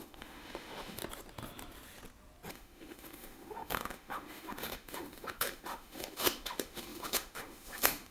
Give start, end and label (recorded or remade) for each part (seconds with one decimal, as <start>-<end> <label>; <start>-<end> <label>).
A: 0.0-1.0 remade; 1.0-2.5 recorded; 2.5-8.1 remade